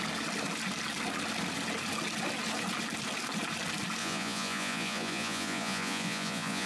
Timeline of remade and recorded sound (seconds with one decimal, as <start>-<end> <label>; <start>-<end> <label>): 0.0-4.0 recorded; 4.0-6.7 remade